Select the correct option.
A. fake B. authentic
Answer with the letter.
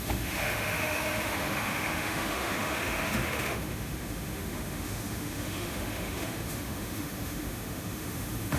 A